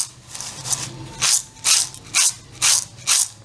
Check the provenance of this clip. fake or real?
real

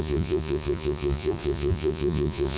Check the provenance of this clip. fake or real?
fake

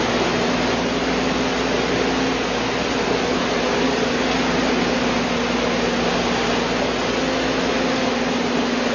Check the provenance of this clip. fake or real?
real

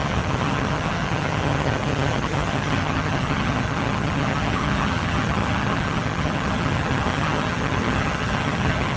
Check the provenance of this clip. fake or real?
fake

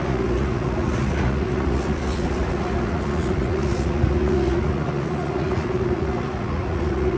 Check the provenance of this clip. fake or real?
fake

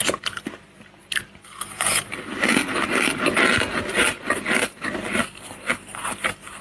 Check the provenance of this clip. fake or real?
real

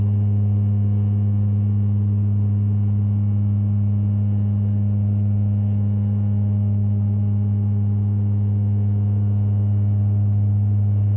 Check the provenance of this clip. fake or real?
real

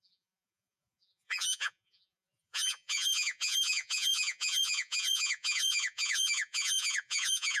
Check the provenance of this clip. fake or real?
fake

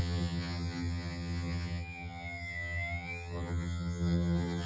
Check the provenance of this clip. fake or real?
fake